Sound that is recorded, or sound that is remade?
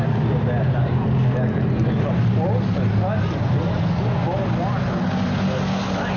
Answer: recorded